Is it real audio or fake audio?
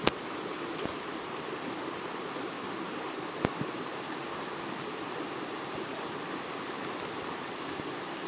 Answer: real